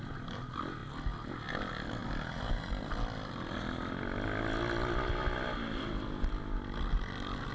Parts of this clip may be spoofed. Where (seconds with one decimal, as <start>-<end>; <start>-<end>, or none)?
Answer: none